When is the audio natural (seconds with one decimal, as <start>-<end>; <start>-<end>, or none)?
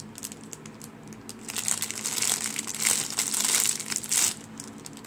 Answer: 0.0-2.7; 4.2-5.1